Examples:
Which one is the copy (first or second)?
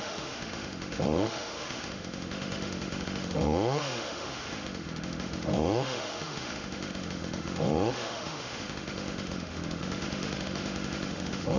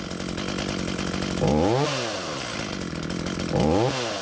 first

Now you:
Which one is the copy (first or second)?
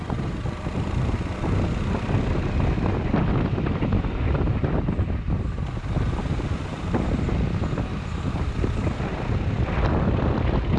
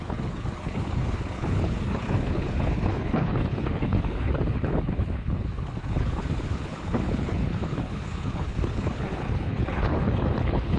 second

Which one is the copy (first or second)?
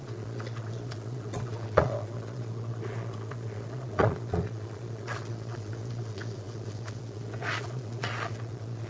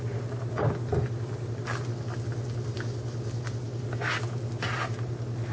first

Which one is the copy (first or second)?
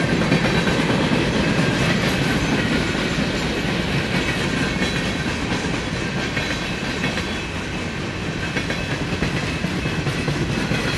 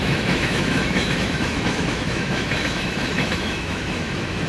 second